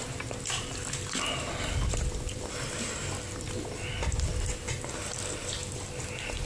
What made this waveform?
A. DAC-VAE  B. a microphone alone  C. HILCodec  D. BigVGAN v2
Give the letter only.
B